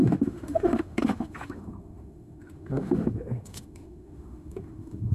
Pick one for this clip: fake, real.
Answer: fake